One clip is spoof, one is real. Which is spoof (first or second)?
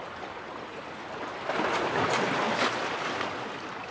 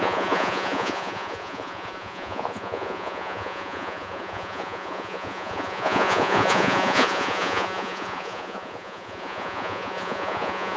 second